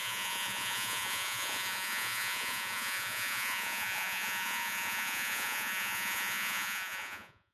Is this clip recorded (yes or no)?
no